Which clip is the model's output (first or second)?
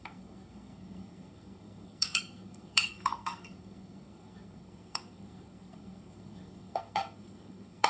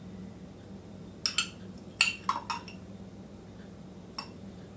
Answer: first